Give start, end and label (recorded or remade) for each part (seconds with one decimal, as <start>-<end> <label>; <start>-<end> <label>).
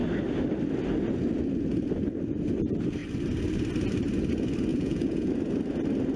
0.0-4.7 recorded; 4.7-5.3 remade; 5.3-6.2 recorded